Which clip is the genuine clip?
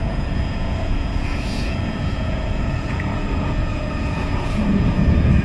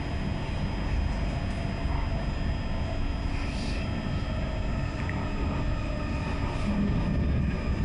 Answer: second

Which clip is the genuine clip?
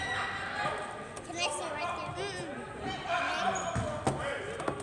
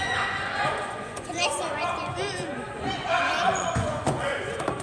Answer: first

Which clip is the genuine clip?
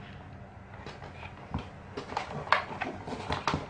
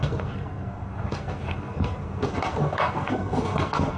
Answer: first